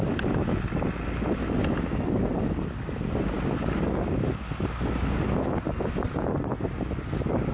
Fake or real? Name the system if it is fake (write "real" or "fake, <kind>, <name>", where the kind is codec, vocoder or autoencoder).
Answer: real